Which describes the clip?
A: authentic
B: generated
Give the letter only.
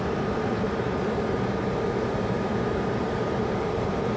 B